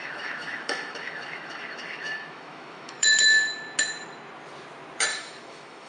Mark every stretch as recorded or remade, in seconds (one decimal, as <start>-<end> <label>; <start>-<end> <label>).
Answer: 0.0-3.4 remade; 3.4-5.1 recorded; 5.1-5.9 remade